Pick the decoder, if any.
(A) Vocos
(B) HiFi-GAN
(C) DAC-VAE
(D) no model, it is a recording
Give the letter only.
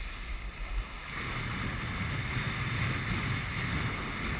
D